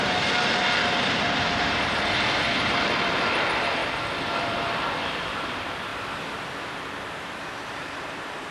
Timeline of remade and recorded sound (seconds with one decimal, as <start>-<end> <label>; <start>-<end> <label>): 0.0-3.8 remade; 3.8-4.4 recorded; 4.4-5.9 remade; 5.9-7.7 recorded; 7.7-8.5 remade